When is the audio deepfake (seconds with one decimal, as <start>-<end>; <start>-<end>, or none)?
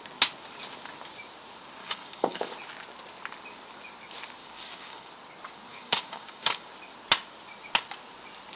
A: 1.8-2.5; 4.4-5.1; 5.7-6.7